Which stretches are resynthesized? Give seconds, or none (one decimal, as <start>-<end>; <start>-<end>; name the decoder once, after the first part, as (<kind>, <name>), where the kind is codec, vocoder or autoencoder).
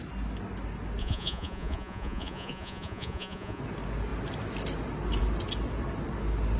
1.0-3.6 (vocoder, Vocos)